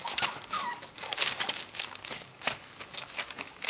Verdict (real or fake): fake